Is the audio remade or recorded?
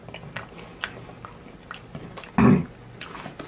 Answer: recorded